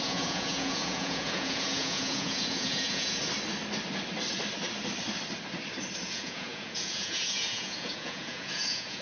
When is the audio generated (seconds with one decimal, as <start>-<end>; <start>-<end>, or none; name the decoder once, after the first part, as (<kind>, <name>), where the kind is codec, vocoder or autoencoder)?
0.0-3.2 (vocoder, Vocos); 6.0-9.0